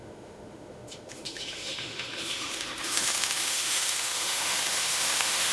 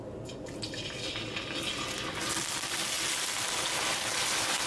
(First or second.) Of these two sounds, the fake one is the first